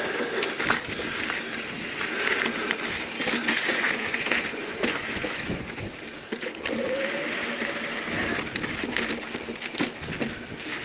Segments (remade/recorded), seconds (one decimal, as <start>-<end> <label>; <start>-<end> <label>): 0.0-3.4 recorded; 3.4-5.9 remade; 5.9-10.8 recorded